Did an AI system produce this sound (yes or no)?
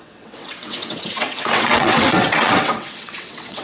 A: yes